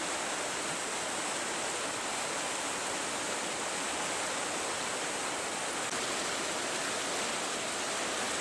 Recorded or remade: recorded